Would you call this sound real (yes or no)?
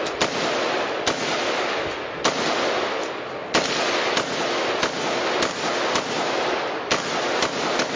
yes